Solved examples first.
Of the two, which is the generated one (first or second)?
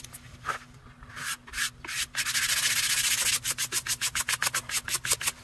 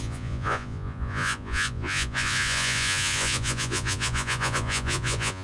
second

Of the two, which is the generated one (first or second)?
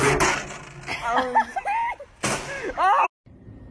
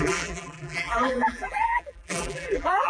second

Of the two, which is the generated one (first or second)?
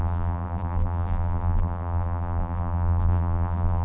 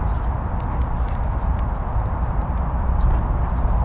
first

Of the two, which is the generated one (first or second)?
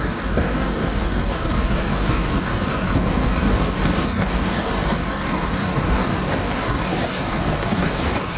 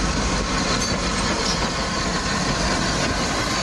first